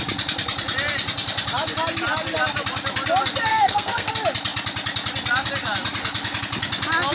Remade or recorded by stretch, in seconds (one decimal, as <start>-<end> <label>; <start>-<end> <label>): 0.0-3.5 recorded; 3.5-4.1 remade; 4.1-7.1 recorded